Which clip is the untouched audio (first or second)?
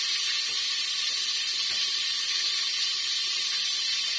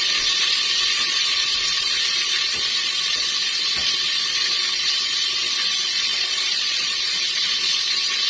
first